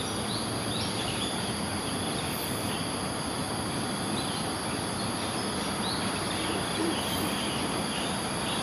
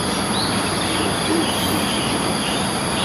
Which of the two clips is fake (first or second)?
first